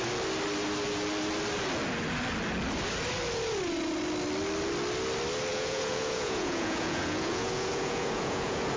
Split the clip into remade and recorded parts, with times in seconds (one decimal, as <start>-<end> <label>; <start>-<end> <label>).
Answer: 0.0-5.5 recorded; 5.5-8.8 remade